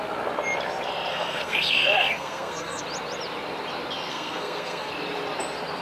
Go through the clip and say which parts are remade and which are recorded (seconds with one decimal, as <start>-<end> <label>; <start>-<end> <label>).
0.0-1.1 recorded; 1.1-2.8 remade; 2.8-4.1 recorded; 4.1-4.9 remade; 4.9-5.8 recorded